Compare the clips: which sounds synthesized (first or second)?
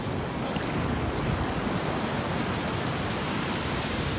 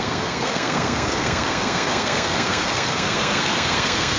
second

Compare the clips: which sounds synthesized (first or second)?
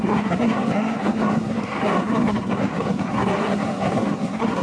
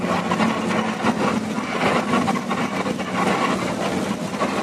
first